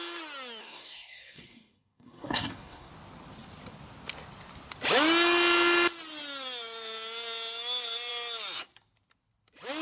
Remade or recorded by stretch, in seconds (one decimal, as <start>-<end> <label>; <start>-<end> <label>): 0.0-0.6 recorded; 0.6-2.9 remade; 2.9-9.8 recorded